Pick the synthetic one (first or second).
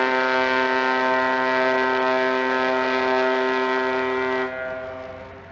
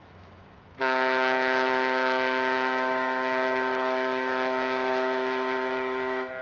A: second